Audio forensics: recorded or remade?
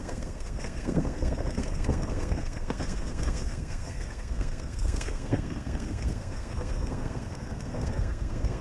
remade